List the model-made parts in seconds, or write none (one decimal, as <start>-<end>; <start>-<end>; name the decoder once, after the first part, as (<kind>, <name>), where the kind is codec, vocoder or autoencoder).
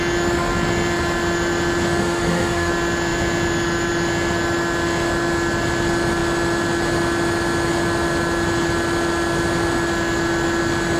2.0-2.7 (autoencoder, DAC-VAE)